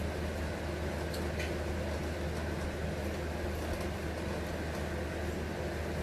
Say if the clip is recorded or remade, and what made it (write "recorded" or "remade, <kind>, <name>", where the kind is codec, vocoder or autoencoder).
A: recorded